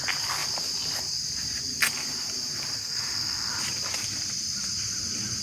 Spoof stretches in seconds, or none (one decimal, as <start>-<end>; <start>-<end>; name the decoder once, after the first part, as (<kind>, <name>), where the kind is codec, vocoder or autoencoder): 2.8-3.5 (codec, SNAC)